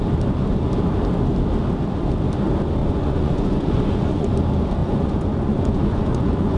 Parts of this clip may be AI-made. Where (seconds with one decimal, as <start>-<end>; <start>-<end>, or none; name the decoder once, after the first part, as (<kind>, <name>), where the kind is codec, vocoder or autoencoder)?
2.8-4.3 (vocoder, Vocos); 4.8-6.6